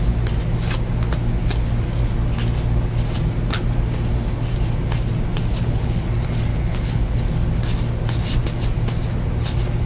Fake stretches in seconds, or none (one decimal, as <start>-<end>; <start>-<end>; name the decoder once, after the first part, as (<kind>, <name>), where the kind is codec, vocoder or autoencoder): 5.5-6.0 (codec, HILCodec); 6.5-7.2